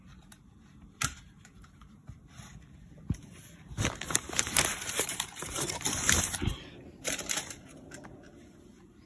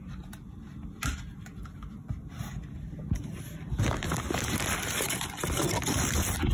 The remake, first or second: first